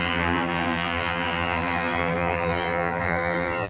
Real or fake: fake